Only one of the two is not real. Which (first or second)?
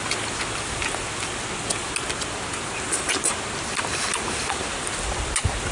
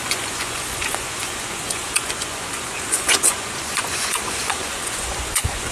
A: second